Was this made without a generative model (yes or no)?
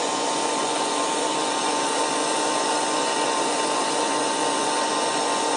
no